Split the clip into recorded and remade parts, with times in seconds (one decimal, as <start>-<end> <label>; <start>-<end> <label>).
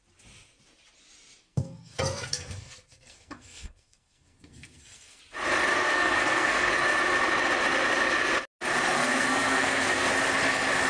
0.0-1.4 recorded; 1.4-5.2 remade; 5.2-5.7 recorded; 5.7-6.7 remade; 6.7-9.0 recorded; 9.0-10.1 remade; 10.1-10.9 recorded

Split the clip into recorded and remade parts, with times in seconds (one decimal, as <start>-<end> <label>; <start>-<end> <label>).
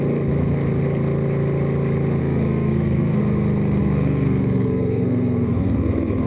0.0-2.2 recorded; 2.2-3.2 remade; 3.2-3.8 recorded; 3.8-6.3 remade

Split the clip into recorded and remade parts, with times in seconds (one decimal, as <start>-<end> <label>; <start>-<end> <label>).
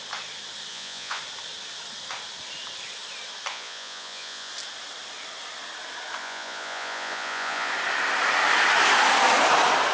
0.0-0.7 recorded; 0.7-1.2 remade; 1.2-3.5 recorded; 3.5-4.5 remade; 4.5-6.2 recorded; 6.2-7.7 remade; 7.7-9.9 recorded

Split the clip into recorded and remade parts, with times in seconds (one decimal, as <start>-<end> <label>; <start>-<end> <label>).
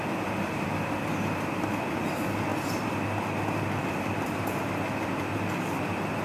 0.0-6.2 recorded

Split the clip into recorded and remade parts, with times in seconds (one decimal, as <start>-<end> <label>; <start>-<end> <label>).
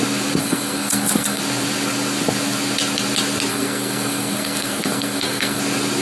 0.0-0.4 recorded; 0.4-1.4 remade; 1.4-3.5 recorded; 3.5-5.6 remade; 5.6-6.0 recorded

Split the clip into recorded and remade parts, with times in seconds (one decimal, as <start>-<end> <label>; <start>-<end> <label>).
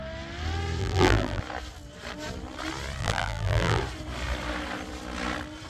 0.0-0.8 recorded; 0.8-1.4 remade; 1.4-3.0 recorded; 3.0-3.8 remade; 3.8-5.7 recorded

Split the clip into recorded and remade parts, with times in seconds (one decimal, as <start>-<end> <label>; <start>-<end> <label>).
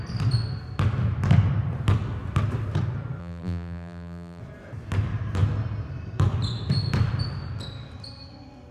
0.0-3.2 recorded; 3.2-4.4 remade; 4.4-8.7 recorded